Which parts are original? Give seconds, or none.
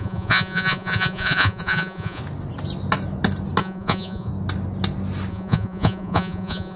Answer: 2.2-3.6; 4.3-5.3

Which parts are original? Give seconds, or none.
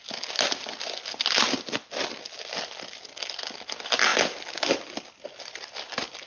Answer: 0.0-6.3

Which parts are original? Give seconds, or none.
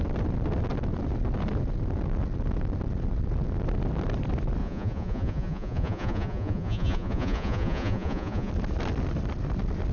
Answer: 0.0-4.6; 8.5-9.9